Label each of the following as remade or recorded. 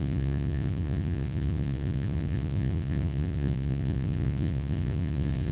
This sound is remade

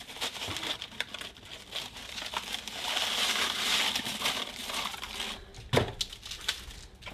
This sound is recorded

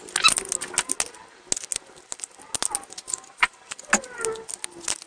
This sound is recorded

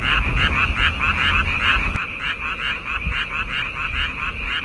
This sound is remade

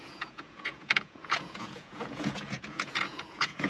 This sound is remade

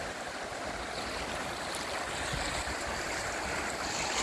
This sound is recorded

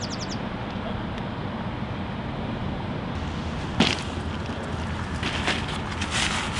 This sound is recorded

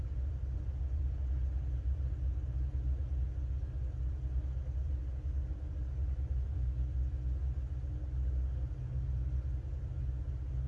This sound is recorded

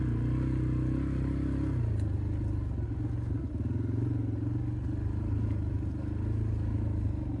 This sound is recorded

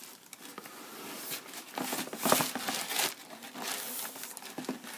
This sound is recorded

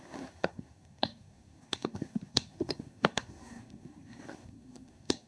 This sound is remade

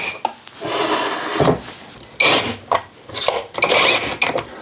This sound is recorded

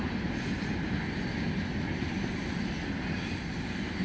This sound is recorded